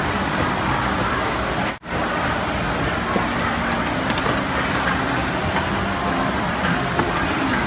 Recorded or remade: recorded